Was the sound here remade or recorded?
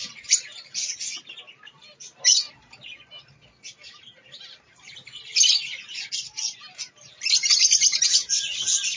recorded